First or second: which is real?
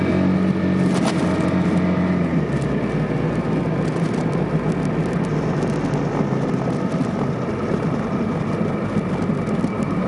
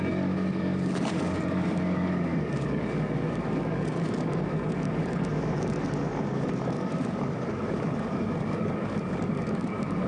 first